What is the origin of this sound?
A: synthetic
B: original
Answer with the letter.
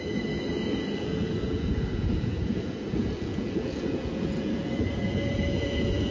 A